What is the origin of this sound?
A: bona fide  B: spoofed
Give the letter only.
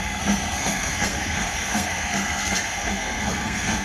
B